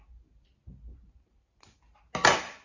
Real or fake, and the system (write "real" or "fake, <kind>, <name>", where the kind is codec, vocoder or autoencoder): real